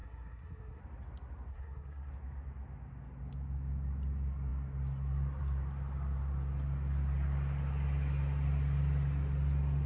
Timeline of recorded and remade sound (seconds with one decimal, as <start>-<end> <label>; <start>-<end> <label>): 0.0-0.8 remade; 0.8-1.5 recorded; 1.5-2.1 remade; 2.1-9.9 recorded